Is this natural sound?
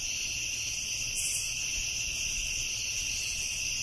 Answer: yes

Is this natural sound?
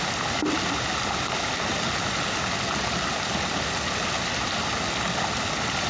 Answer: yes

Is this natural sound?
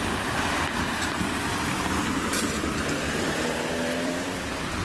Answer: no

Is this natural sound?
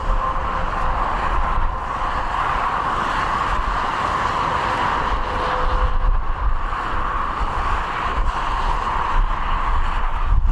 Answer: yes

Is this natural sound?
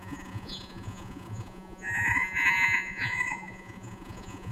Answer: no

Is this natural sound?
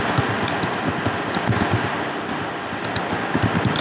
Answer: yes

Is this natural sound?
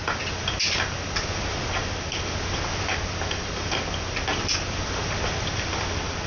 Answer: yes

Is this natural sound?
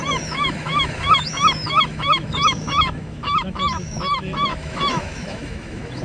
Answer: no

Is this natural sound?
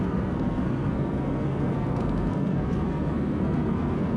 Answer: no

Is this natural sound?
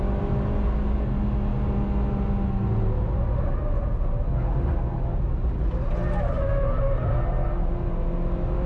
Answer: yes